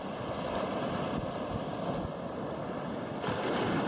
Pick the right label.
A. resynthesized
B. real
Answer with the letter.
B